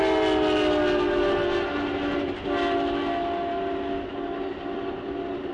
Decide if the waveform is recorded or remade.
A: recorded